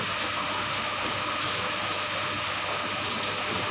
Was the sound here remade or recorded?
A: recorded